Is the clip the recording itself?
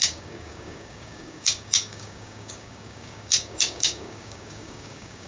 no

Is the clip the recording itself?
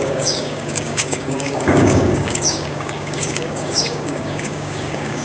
no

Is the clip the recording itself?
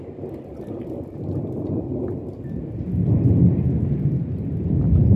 yes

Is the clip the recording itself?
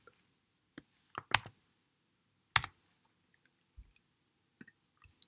yes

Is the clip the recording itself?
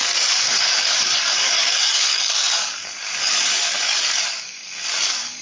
no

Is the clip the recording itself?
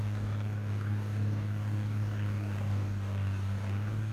no